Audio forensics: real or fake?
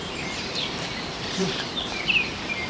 fake